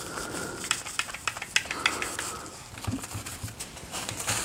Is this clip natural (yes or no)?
yes